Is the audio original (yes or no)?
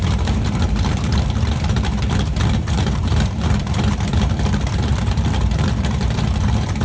no